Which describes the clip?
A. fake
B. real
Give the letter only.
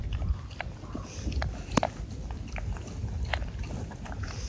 B